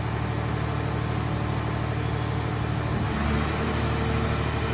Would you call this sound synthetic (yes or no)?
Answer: no